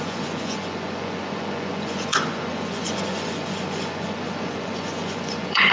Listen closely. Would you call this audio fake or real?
fake